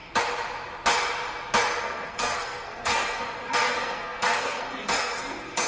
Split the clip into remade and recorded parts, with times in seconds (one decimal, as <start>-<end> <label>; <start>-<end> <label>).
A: 0.0-1.8 recorded; 1.8-5.7 remade